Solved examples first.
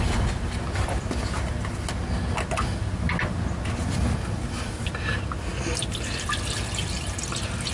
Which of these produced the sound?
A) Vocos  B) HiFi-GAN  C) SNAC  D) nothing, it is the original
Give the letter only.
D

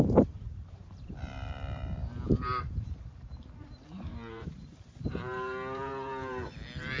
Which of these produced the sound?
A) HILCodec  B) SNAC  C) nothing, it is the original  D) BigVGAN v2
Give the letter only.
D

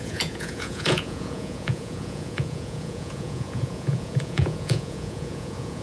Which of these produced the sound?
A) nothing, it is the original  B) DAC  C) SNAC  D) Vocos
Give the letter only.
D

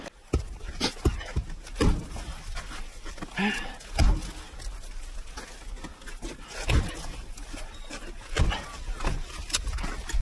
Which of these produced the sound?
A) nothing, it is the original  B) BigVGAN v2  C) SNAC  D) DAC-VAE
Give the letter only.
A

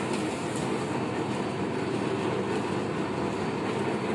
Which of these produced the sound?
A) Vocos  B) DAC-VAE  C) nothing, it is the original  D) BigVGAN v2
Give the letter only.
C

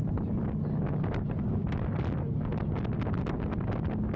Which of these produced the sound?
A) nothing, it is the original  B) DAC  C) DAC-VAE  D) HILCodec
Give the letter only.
A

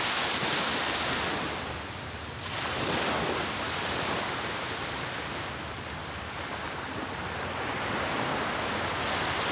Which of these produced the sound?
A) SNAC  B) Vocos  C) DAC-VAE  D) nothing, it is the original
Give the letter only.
D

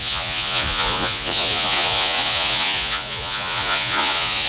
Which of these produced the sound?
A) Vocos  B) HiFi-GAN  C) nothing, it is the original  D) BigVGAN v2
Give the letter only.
A